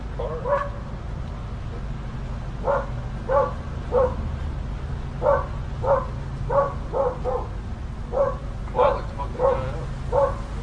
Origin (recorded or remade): recorded